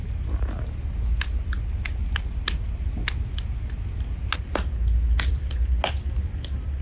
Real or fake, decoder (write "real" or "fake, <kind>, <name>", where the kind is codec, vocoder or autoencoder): real